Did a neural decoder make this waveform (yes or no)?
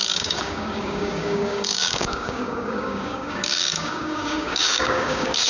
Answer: yes